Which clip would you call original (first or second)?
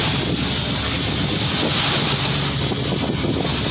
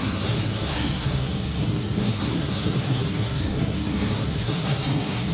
first